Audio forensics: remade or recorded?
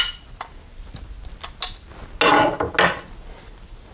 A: recorded